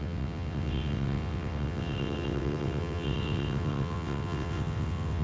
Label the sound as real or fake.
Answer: fake